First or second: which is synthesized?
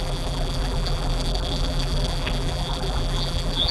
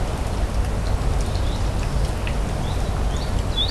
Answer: first